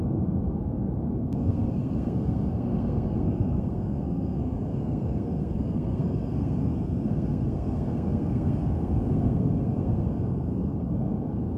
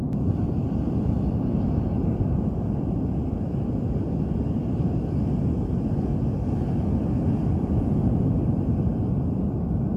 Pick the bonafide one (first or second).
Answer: second